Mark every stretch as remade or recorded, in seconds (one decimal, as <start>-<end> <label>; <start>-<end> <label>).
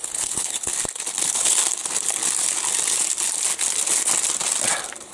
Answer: 0.0-0.7 remade; 0.7-1.2 recorded; 1.2-1.6 remade; 1.6-5.1 recorded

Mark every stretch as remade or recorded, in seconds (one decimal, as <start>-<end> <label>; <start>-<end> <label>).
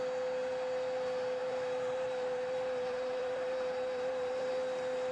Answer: 0.0-1.4 recorded; 1.4-4.5 remade; 4.5-5.1 recorded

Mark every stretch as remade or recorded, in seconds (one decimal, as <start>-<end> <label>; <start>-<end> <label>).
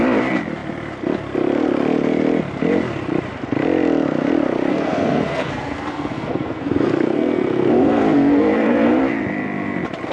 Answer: 0.0-4.7 recorded; 4.7-9.0 remade; 9.0-10.1 recorded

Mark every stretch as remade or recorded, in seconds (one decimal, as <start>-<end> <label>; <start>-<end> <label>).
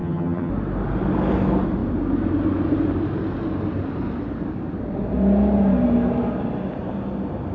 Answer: 0.0-0.5 remade; 0.5-7.5 recorded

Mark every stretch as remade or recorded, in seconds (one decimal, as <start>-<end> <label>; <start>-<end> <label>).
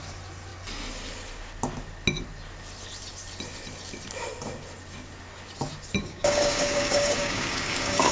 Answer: 0.0-6.0 recorded; 6.0-8.1 remade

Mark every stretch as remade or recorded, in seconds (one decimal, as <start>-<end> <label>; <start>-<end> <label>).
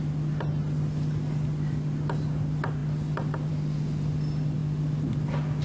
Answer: 0.0-5.6 recorded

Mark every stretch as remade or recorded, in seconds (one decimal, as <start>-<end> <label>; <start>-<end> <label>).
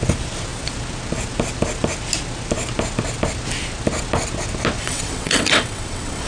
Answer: 0.0-4.8 recorded; 4.8-6.3 remade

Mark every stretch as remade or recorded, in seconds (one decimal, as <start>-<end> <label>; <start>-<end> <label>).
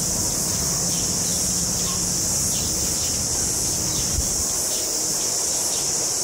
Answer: 0.0-6.2 recorded